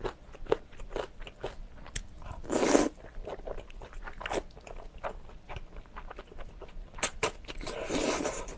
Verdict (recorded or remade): recorded